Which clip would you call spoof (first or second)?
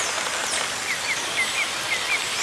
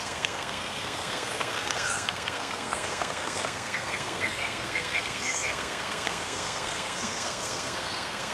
second